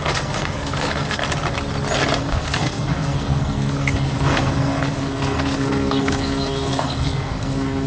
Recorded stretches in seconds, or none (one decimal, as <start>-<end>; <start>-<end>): 1.2-2.2